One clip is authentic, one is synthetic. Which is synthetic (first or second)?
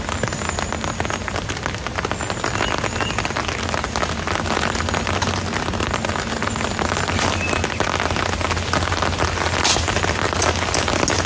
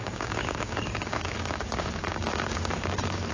second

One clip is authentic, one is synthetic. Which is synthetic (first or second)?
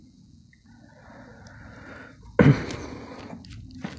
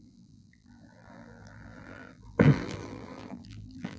second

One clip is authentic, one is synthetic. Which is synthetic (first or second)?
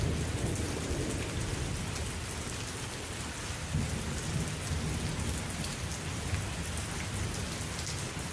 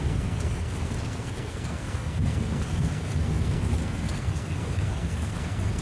second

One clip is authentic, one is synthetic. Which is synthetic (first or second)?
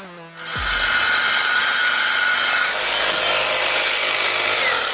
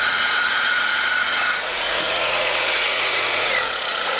second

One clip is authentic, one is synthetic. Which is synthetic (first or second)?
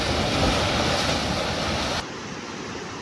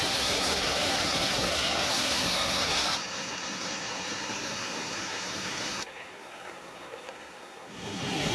second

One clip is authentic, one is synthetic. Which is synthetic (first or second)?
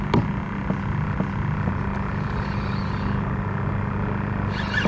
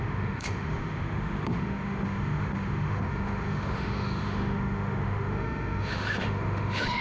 second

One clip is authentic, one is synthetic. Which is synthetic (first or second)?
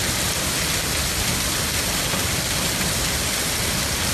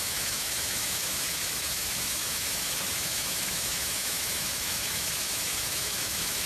second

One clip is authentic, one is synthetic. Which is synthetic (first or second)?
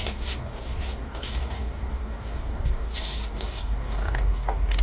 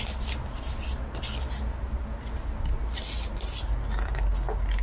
first